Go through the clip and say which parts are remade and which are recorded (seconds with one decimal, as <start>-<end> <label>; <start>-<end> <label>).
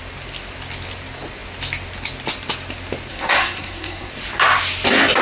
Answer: 0.0-3.1 recorded; 3.1-4.1 remade; 4.1-5.2 recorded